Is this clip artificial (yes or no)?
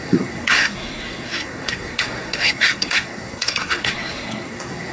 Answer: yes